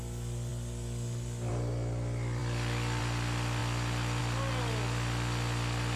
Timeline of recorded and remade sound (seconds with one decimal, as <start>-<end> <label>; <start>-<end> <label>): 0.0-6.0 recorded